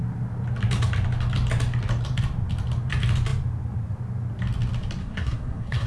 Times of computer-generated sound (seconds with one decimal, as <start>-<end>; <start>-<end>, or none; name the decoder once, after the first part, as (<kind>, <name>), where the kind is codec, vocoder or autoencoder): 5.0-5.9 (codec, SNAC)